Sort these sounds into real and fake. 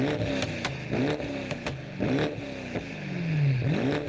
real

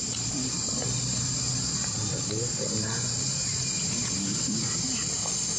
real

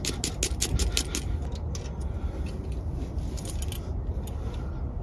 real